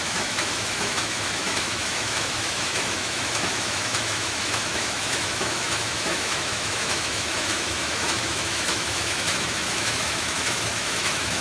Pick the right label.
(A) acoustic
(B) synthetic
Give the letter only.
B